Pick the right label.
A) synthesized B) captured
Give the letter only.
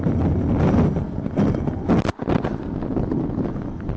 B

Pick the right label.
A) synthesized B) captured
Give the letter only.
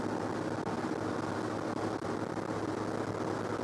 B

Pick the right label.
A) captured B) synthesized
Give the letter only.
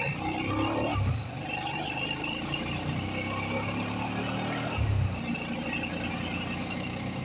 A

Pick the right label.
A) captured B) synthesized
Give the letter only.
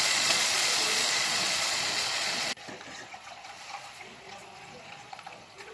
B